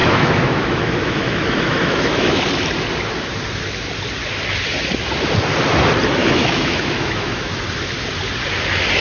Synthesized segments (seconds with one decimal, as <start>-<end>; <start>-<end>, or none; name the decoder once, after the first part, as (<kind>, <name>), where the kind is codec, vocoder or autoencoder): 0.0-2.4 (autoencoder, DAC-VAE); 6.2-7.6